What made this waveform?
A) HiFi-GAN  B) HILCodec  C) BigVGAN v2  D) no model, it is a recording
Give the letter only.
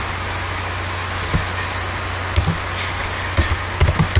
D